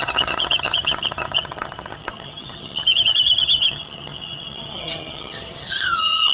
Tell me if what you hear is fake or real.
fake